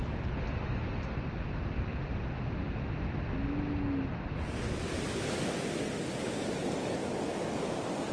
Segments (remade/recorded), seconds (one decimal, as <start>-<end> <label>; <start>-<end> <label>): 0.0-8.1 recorded